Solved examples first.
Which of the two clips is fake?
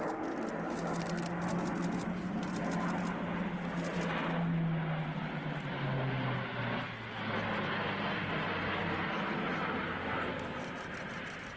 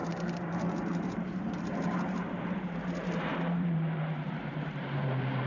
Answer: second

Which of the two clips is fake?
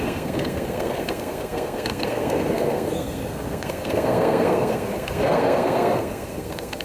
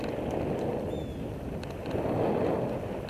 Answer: first